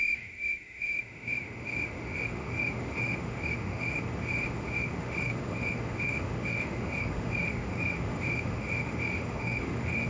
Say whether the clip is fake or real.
fake